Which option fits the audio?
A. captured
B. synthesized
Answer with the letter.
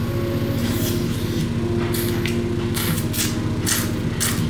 A